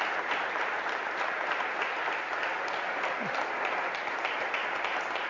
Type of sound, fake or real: real